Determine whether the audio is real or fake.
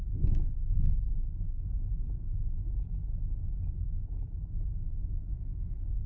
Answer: real